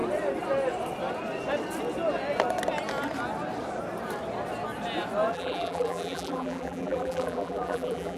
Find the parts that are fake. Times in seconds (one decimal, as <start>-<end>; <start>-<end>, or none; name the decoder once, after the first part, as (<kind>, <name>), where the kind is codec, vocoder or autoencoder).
5.3-8.2 (vocoder, BigVGAN v2)